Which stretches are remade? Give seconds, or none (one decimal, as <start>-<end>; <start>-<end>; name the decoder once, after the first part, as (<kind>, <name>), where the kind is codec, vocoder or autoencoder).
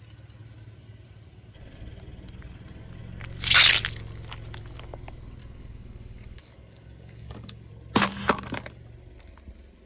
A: 5.4-7.7 (codec, DAC)